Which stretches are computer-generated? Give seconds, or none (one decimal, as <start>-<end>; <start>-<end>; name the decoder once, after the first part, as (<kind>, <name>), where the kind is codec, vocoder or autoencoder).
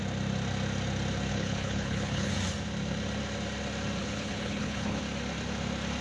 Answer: 1.3-2.3 (codec, HILCodec); 4.0-5.0